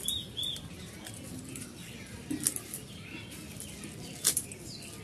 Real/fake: real